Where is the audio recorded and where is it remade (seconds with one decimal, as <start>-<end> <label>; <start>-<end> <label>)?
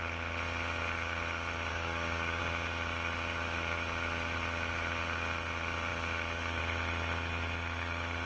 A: 0.0-1.7 recorded; 1.7-2.4 remade; 2.4-8.3 recorded